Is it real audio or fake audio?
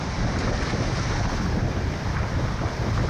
real